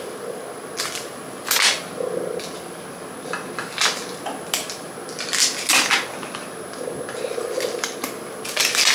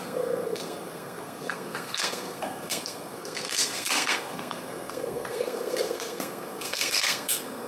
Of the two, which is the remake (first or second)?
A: second